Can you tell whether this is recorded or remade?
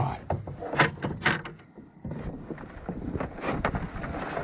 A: recorded